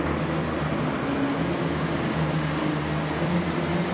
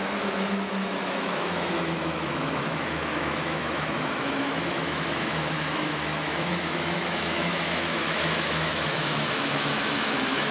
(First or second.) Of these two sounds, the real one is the first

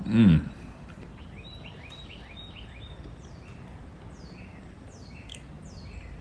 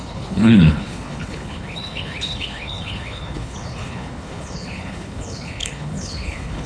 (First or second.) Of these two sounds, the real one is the first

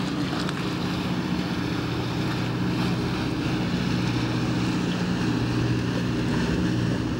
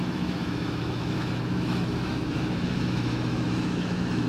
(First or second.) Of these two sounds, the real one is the first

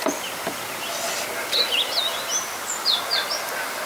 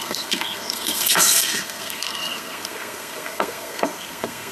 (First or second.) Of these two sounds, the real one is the first